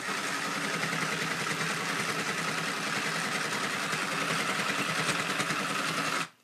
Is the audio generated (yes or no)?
no